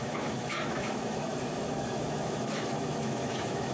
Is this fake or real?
fake